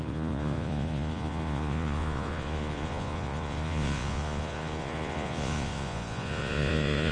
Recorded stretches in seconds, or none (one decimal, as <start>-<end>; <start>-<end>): none